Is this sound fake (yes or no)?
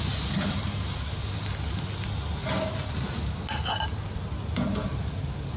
no